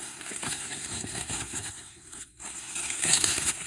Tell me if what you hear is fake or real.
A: fake